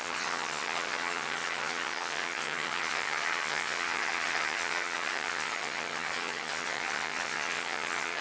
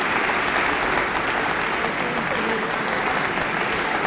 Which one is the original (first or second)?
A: second